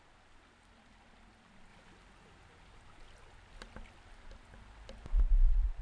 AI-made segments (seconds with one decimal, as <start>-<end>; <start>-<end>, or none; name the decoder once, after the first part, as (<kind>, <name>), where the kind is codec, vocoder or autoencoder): none